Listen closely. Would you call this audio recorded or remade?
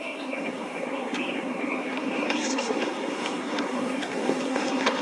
remade